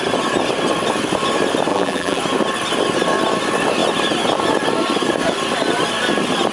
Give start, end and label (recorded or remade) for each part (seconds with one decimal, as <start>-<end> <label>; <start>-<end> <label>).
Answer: 0.0-1.7 recorded; 1.7-2.2 remade; 2.2-6.5 recorded